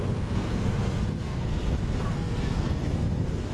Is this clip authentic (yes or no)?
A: no